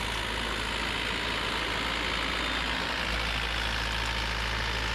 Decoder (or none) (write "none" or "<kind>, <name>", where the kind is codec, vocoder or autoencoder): none